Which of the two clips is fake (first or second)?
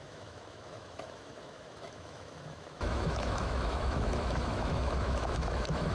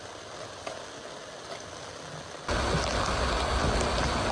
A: first